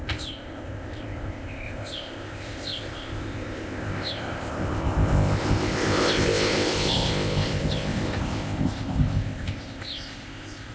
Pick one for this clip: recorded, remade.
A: remade